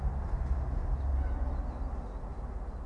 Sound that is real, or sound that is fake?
real